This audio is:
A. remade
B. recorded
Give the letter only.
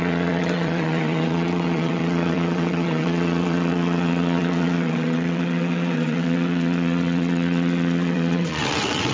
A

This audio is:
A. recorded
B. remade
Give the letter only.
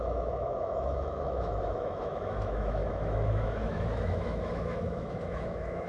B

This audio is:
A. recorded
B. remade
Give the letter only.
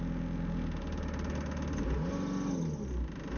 A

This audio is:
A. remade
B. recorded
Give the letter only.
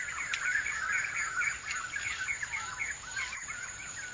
B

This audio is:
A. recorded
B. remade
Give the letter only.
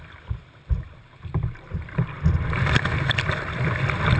B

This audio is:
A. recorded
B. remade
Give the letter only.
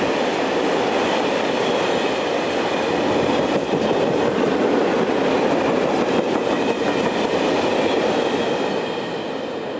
A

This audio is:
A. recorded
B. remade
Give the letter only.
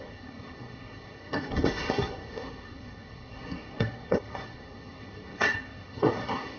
B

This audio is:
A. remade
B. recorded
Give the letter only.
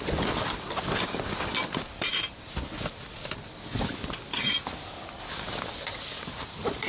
B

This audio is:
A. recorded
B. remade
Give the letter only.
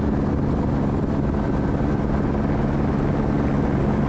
A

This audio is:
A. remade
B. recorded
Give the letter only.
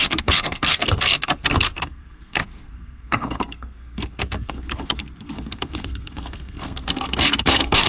A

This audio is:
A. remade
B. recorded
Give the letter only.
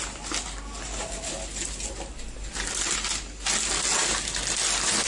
B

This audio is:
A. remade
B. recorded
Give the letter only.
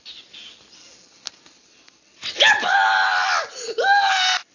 B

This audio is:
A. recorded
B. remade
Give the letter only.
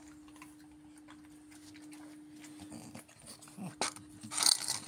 A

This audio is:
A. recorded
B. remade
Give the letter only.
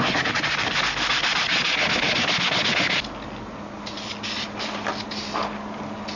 A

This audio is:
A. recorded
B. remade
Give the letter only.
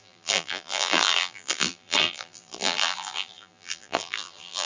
B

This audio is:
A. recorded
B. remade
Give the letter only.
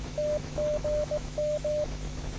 B